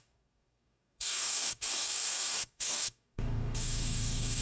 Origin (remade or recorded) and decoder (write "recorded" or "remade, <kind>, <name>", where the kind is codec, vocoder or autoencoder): remade, codec, DAC